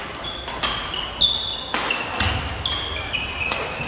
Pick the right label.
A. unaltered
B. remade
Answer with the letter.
A